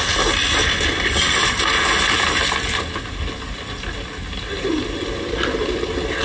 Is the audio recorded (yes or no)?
yes